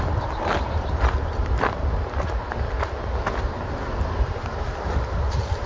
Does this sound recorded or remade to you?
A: recorded